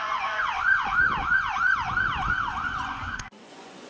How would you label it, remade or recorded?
remade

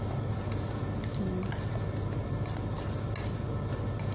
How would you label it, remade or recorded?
recorded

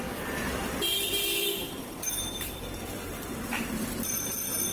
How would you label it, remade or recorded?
remade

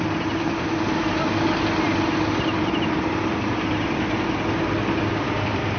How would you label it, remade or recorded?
recorded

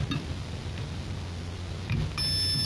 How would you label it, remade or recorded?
recorded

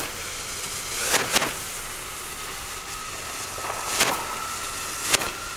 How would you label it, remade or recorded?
recorded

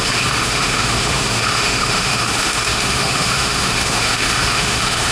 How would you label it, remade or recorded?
remade